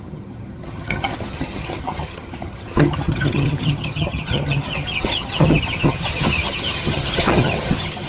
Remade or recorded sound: remade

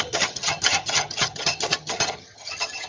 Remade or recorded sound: remade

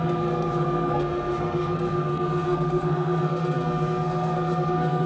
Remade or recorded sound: remade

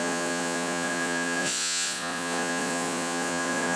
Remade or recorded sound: remade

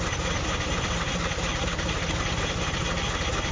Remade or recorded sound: recorded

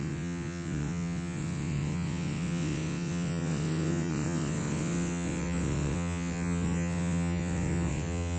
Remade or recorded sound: remade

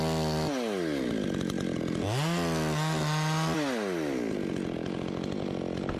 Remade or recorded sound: recorded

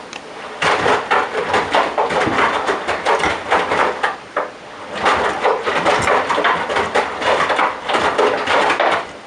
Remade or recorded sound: remade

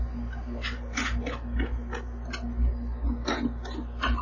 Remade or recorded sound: recorded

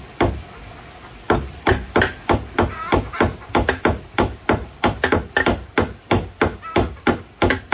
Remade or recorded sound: recorded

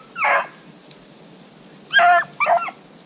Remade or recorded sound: recorded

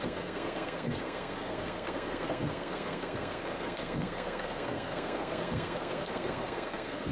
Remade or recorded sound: remade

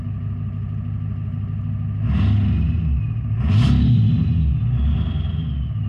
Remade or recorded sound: recorded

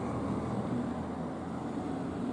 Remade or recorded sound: recorded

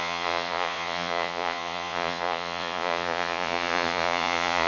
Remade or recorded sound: remade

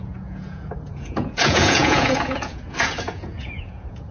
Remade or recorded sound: remade